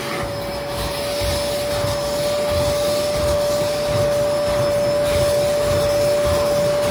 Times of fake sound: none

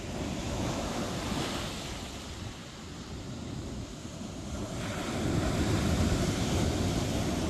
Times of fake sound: 0.4-1.0 (autoencoder, DAC-VAE)

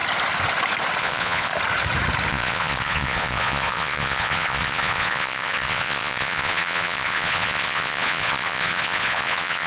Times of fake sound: 1.0-1.5 (vocoder, Vocos); 2.3-9.7

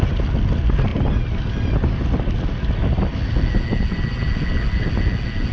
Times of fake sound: none